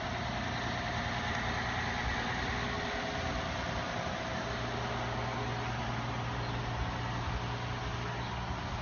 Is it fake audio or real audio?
real